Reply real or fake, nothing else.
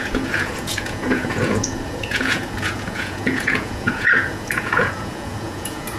fake